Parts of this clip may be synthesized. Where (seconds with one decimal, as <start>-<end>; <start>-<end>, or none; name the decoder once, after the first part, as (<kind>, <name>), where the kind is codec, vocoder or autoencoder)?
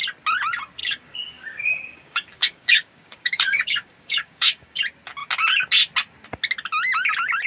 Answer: 0.8-4.8 (codec, DAC)